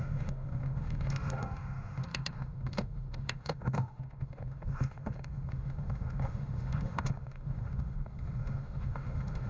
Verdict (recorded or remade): remade